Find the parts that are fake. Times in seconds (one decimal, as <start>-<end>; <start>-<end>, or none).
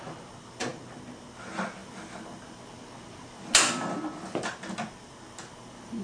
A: none